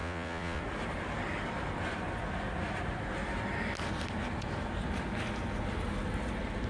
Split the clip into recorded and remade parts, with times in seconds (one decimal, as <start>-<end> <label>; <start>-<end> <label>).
0.0-0.6 remade; 0.6-6.7 recorded